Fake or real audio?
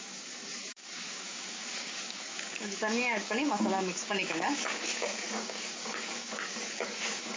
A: fake